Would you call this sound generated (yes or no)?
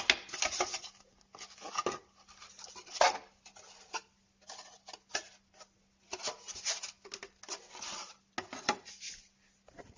no